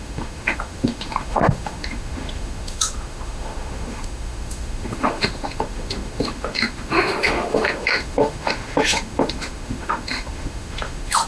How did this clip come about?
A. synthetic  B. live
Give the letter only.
A